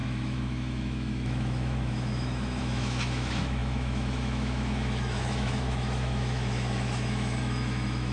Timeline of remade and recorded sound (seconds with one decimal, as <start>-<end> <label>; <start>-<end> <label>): 0.0-8.1 remade